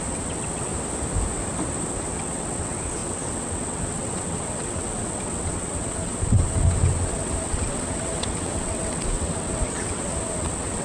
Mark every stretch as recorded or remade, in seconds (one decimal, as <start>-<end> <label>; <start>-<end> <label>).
0.0-0.7 remade; 0.7-1.9 recorded; 1.9-10.8 remade